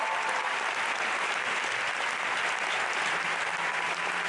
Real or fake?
real